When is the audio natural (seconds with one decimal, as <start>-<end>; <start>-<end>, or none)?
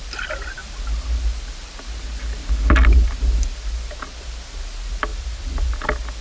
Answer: 0.0-6.2